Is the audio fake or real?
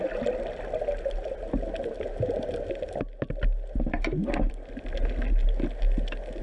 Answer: real